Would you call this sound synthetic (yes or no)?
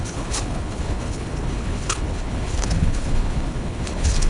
yes